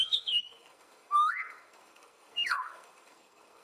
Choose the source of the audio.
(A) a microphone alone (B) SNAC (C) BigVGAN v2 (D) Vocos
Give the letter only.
B